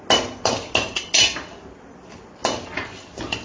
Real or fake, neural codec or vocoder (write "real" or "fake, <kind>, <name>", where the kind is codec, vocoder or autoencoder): real